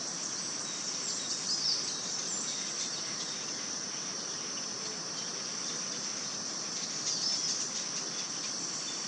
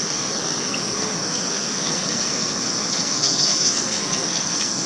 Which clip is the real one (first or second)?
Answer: first